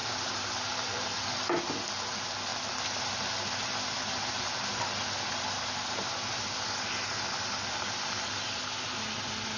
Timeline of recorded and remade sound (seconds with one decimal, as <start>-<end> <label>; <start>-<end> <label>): 0.0-9.6 recorded